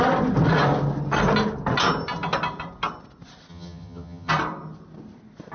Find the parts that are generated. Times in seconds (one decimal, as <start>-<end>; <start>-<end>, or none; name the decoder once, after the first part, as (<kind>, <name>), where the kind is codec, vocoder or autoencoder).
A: 3.5-4.3 (vocoder, HiFi-GAN)